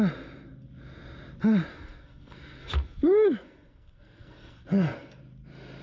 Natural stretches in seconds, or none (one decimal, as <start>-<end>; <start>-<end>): 0.0-1.7; 5.2-5.8